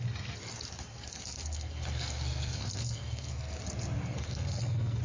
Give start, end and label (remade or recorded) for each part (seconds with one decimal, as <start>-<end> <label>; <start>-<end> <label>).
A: 0.0-0.9 recorded; 0.9-3.6 remade; 3.6-4.0 recorded; 4.0-5.0 remade